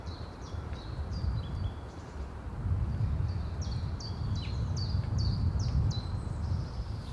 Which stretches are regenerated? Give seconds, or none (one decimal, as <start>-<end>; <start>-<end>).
0.0-2.5; 5.7-7.1